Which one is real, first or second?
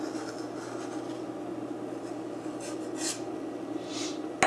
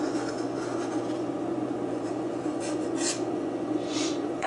first